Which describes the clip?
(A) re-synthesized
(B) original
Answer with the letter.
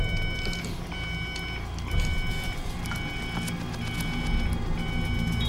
B